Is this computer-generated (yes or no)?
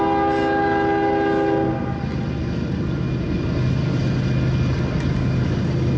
no